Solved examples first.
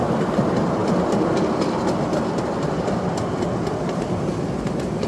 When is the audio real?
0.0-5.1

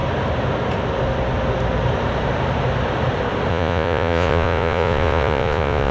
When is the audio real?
0.0-3.5

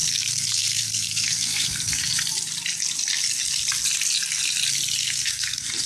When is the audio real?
2.1-5.0

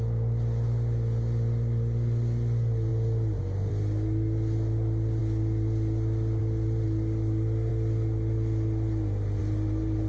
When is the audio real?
0.0-10.1

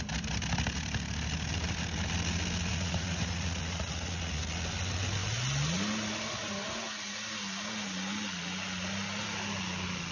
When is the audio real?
0.0-2.7; 4.4-10.1

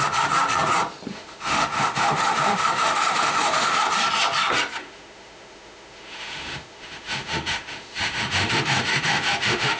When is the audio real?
0.0-1.1; 3.8-4.8

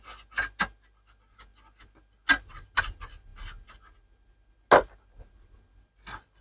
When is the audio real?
0.0-6.4

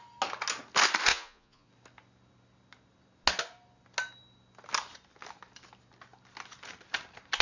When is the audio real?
0.0-1.1; 1.7-7.4